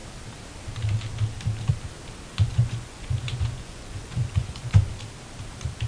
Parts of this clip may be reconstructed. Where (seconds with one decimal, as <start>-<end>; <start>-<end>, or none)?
2.3-4.9